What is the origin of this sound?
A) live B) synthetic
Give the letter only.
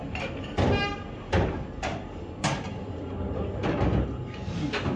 A